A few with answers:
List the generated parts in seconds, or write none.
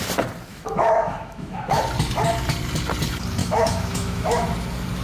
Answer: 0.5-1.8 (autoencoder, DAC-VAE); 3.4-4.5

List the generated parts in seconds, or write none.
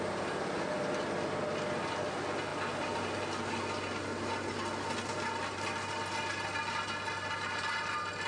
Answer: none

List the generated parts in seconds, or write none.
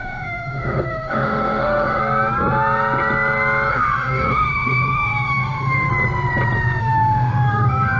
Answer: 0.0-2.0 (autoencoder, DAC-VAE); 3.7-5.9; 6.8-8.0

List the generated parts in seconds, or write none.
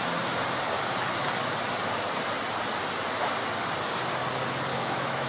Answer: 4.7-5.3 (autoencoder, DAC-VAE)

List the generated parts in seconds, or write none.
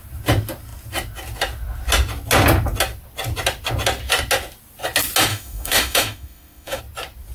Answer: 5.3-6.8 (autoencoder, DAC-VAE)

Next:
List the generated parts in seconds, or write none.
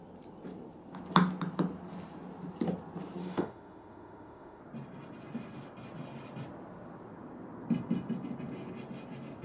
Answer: 3.2-4.6 (autoencoder, DAC-VAE)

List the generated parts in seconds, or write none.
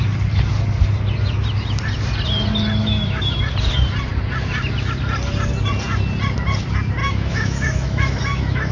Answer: 2.8-3.4 (autoencoder, DAC-VAE); 7.0-8.7